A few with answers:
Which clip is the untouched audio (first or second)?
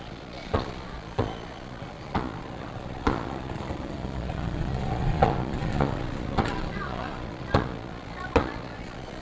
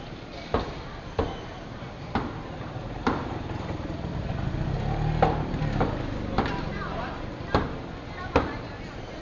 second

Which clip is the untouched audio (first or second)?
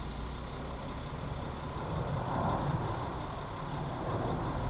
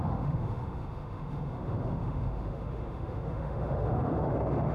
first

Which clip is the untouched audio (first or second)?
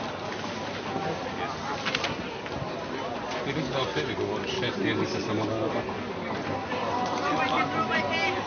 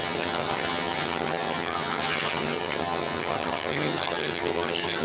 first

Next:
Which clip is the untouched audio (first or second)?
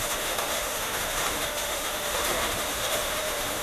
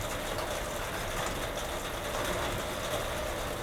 second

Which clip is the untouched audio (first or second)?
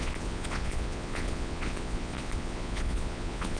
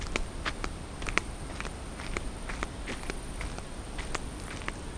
second